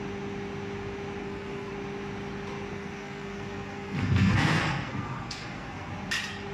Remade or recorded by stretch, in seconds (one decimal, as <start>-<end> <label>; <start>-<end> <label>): 0.0-1.2 recorded; 1.2-1.7 remade; 1.7-2.7 recorded; 2.7-5.9 remade; 5.9-6.5 recorded